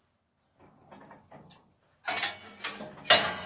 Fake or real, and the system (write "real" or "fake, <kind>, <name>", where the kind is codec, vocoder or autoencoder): real